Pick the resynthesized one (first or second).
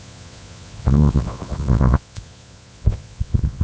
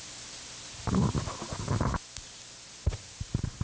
first